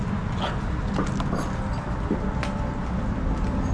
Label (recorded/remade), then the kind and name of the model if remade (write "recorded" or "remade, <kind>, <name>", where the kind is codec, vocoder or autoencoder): recorded